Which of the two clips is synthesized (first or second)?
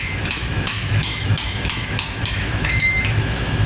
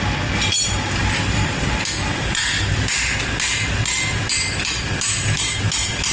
first